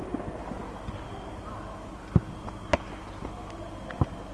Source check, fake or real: real